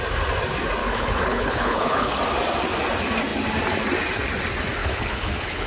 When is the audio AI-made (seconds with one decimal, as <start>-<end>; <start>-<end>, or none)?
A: 0.8-2.2; 4.8-5.7